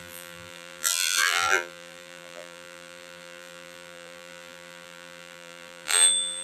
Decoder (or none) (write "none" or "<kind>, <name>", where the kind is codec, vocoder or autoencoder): vocoder, BigVGAN v2